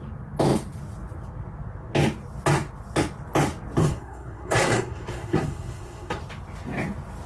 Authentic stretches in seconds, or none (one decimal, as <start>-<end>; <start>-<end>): 0.0-3.8; 6.2-7.3